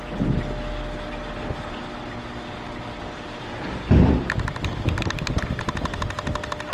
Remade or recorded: recorded